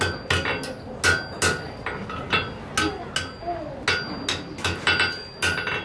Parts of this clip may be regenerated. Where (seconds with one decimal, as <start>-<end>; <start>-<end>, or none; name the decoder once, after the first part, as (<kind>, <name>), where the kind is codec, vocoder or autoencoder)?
none

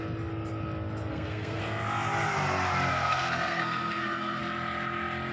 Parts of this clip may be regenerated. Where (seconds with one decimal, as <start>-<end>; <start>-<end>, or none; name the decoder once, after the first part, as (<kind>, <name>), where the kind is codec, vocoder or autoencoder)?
1.1-1.6 (codec, SNAC); 2.9-4.4

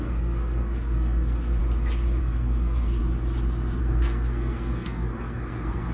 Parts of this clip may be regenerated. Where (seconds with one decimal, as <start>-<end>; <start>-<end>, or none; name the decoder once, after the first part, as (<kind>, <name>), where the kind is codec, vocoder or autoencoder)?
0.0-1.6 (codec, SNAC); 2.2-3.0; 3.8-5.9

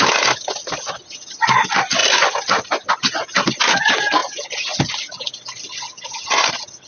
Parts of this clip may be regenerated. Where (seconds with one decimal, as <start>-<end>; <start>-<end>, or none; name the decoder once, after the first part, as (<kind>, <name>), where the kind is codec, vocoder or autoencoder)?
none

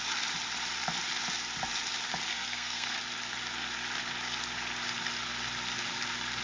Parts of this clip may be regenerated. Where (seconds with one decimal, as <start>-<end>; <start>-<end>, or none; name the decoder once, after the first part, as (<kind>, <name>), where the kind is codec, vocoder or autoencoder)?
2.3-3.0 (codec, SNAC)

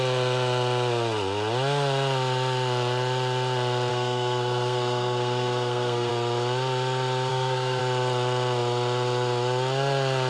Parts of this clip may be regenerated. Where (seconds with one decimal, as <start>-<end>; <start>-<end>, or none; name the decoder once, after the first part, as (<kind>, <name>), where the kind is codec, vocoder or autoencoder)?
3.9-6.1 (codec, SNAC); 7.3-7.8

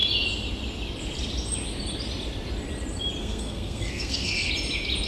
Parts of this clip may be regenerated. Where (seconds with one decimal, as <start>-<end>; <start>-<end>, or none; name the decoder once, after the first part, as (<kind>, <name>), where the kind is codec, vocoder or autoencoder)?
3.2-4.5 (codec, SNAC)